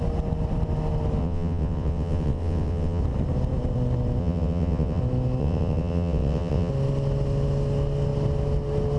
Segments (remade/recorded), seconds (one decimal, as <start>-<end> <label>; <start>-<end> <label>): 0.0-1.2 recorded; 1.2-3.0 remade; 3.0-4.2 recorded; 4.2-5.0 remade; 5.0-5.4 recorded; 5.4-6.7 remade; 6.7-9.0 recorded